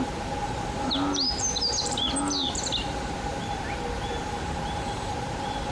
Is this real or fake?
real